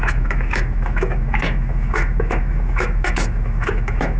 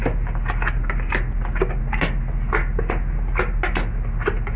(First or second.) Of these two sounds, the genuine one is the second